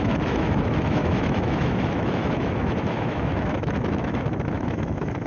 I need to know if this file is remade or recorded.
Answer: remade